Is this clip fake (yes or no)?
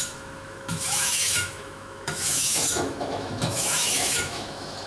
yes